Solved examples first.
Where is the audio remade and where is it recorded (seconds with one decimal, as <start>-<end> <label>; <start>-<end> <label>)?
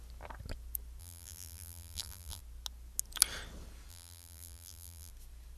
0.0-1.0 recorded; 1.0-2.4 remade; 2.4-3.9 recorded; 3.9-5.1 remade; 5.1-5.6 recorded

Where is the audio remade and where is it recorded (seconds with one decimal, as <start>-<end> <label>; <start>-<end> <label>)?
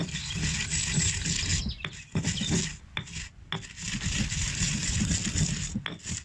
0.0-6.2 recorded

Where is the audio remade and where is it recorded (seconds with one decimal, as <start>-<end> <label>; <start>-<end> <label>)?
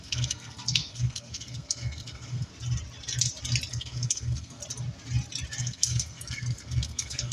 0.0-2.5 remade; 2.5-3.7 recorded; 3.7-4.6 remade; 4.6-5.6 recorded; 5.6-7.3 remade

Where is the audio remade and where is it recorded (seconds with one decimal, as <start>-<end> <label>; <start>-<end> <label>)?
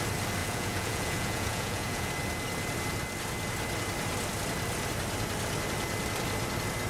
0.0-0.4 recorded; 0.4-2.1 remade; 2.1-6.9 recorded